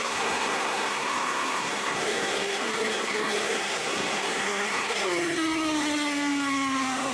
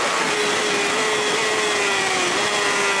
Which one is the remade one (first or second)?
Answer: first